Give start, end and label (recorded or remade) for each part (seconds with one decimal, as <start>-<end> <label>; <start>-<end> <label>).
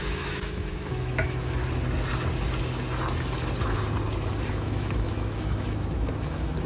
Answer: 0.0-1.6 remade; 1.6-4.5 recorded; 4.5-6.7 remade